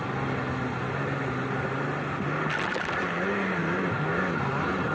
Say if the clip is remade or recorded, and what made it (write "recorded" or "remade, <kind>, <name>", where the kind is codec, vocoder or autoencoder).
recorded